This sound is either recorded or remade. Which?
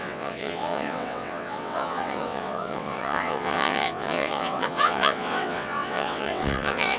remade